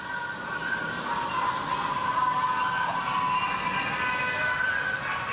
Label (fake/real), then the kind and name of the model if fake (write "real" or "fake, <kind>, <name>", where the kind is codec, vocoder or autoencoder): real